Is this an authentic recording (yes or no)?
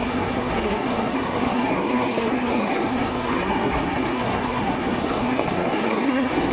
no